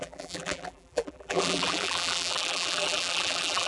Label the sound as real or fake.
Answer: fake